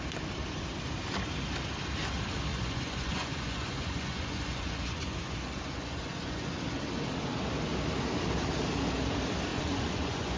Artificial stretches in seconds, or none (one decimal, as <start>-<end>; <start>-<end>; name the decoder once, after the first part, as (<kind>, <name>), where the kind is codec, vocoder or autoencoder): 2.5-6.5 (vocoder, Vocos); 9.5-10.4